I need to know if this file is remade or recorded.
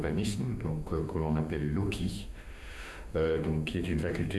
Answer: remade